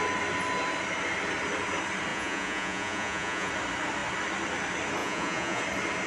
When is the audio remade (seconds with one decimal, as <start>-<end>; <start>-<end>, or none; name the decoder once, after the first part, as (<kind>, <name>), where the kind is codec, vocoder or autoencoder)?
2.1-3.5 (vocoder, Vocos); 5.0-5.6

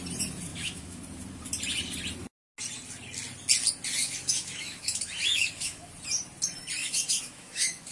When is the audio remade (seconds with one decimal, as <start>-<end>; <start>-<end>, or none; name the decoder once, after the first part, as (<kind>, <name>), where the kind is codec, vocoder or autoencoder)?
0.5-1.0 (autoencoder, DAC-VAE); 4.0-5.9; 6.8-7.9

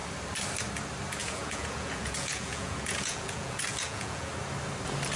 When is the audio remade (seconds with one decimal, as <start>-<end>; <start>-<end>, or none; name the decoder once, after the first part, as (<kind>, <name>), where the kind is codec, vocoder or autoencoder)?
1.2-4.3 (vocoder, Vocos)

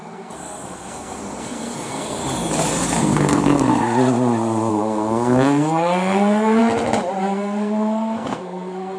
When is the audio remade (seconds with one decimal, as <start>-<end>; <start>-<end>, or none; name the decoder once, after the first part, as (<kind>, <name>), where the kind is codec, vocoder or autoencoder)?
0.0-2.2 (codec, SNAC); 3.0-3.7; 4.7-6.6; 7.2-9.0

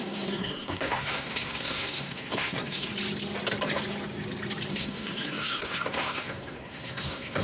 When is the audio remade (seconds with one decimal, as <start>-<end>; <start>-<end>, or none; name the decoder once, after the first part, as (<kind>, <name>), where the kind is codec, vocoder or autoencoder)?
0.0-2.9 (codec, SNAC); 4.7-7.4